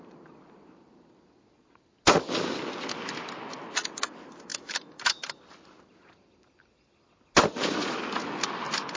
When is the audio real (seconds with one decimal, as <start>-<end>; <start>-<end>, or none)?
0.0-9.0